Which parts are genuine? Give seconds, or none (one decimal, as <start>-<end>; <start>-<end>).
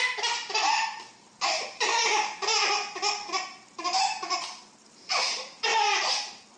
1.9-4.8; 5.7-6.6